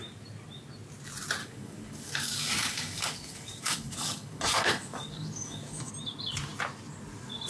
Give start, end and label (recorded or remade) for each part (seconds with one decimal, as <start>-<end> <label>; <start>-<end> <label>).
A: 0.0-1.4 recorded; 1.4-5.9 remade; 5.9-7.5 recorded